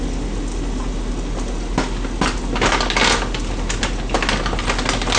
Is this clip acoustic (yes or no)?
yes